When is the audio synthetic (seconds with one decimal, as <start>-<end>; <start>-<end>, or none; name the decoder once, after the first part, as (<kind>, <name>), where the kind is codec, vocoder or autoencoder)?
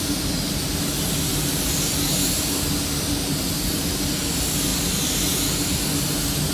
none